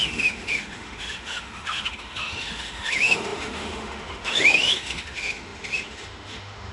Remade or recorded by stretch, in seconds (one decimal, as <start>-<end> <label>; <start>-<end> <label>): 0.0-6.7 remade